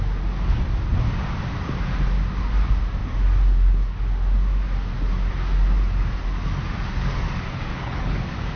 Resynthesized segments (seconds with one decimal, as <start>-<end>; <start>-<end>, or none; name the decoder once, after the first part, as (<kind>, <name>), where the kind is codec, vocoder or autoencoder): 7.7-8.2 (codec, HILCodec)